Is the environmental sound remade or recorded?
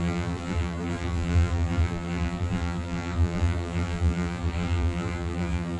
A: remade